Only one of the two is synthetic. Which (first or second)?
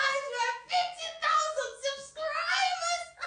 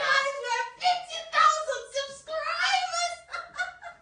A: first